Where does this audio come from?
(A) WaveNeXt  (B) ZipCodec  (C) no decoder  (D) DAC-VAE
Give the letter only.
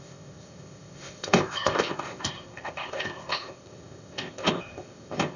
B